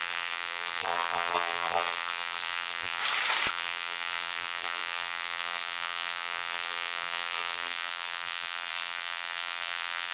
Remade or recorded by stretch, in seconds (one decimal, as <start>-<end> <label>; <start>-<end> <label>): 0.0-3.0 remade; 3.0-3.5 recorded; 3.5-10.1 remade